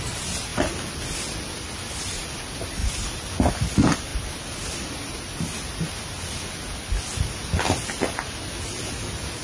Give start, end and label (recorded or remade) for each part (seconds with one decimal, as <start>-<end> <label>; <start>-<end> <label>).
0.0-9.4 recorded